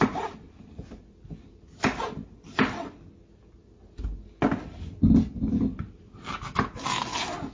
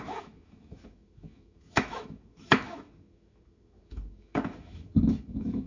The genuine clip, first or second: first